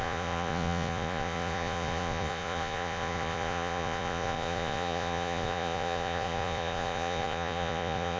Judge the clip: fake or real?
fake